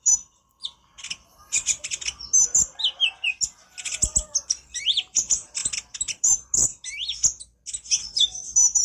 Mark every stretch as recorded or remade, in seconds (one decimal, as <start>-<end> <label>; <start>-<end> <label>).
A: 0.0-1.9 remade; 1.9-4.8 recorded; 4.8-6.7 remade; 6.7-8.0 recorded; 8.0-8.8 remade